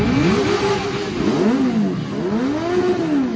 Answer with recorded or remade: recorded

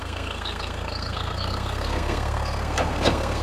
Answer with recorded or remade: remade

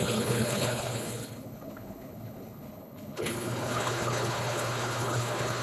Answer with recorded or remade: remade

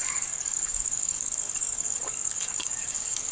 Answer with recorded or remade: remade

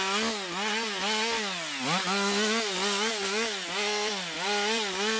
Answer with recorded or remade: recorded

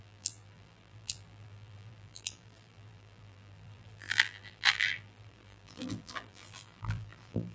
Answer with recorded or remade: remade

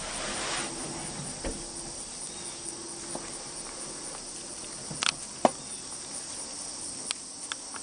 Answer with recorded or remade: recorded